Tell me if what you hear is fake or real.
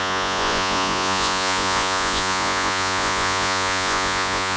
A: fake